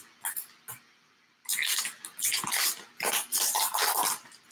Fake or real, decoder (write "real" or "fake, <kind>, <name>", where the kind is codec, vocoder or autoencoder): real